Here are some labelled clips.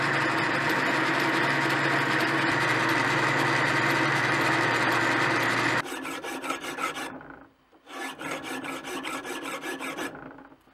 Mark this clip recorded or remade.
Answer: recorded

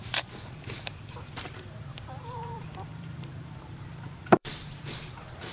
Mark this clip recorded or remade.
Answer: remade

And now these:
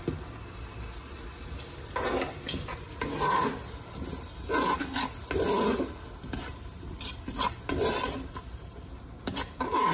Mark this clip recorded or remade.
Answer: recorded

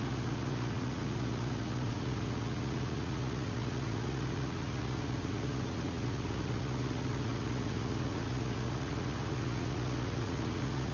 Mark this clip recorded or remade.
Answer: remade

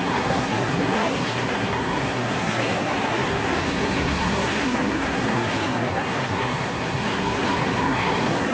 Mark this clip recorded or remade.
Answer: remade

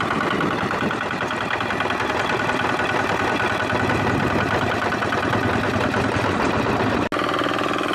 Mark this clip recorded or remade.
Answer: recorded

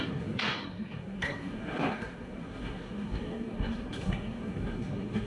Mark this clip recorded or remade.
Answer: remade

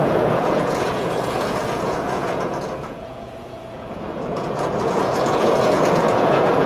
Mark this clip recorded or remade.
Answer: remade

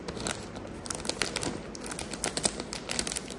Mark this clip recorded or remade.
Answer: recorded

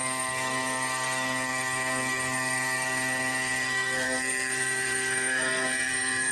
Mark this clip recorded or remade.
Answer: remade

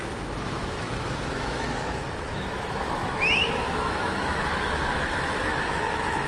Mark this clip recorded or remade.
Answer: remade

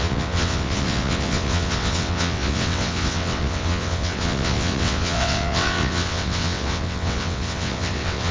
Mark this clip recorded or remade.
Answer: remade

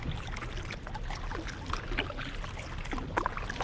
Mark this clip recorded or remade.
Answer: recorded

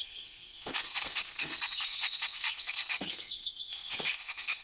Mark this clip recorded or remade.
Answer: remade